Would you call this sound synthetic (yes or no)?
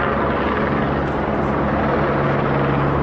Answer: no